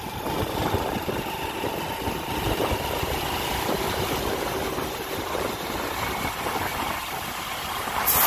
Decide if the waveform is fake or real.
real